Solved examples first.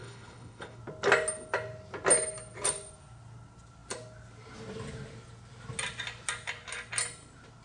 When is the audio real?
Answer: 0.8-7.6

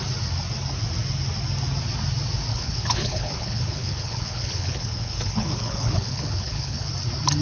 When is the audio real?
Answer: 0.0-2.5; 6.9-7.4